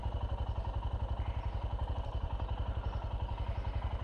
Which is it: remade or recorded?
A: recorded